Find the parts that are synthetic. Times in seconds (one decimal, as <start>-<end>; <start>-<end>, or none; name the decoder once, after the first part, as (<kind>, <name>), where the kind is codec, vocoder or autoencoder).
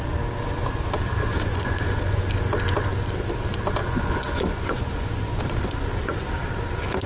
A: 1.2-2.2 (vocoder, Vocos); 3.8-5.4